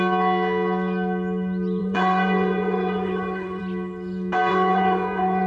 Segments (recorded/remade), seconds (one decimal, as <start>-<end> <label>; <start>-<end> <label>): 0.0-1.8 recorded; 1.8-3.6 remade; 3.6-4.5 recorded; 4.5-5.5 remade